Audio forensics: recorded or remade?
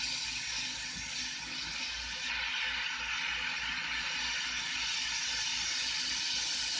recorded